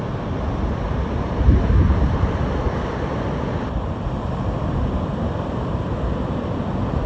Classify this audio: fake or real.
real